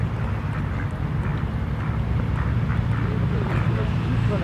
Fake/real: real